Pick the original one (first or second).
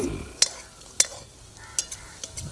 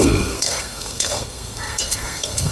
first